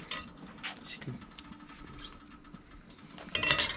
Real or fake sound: real